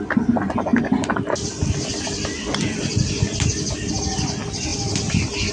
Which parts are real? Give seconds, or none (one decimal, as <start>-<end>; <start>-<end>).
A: 0.0-5.5